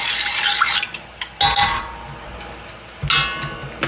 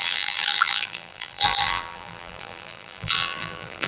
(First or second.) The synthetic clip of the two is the second